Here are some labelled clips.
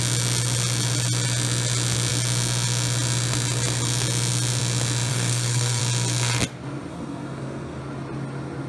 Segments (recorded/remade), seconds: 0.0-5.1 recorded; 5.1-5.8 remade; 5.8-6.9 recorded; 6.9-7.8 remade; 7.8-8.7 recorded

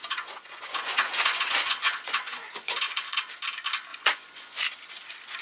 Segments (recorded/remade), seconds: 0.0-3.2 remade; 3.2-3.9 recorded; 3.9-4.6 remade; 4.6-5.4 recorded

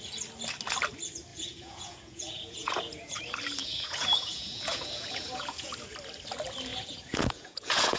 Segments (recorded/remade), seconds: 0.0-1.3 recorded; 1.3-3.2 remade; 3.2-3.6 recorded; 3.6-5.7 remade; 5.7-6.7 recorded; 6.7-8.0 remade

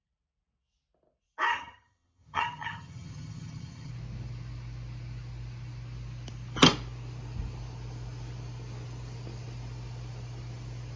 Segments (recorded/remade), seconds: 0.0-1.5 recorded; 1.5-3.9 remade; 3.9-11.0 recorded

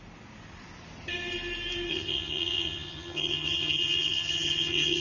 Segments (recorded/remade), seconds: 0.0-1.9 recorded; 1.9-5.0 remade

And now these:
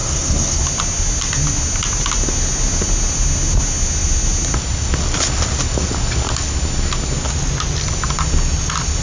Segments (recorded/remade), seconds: 0.0-0.6 remade; 0.6-9.0 recorded

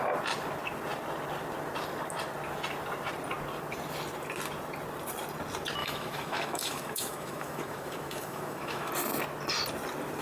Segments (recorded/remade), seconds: 0.0-5.8 recorded; 5.8-8.9 remade; 8.9-10.2 recorded

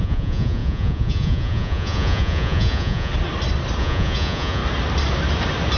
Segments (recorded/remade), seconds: 0.0-3.1 remade; 3.1-3.8 recorded; 3.8-4.6 remade; 4.6-5.8 recorded